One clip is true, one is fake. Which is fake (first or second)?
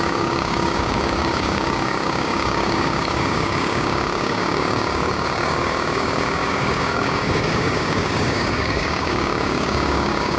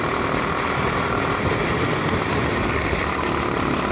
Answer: first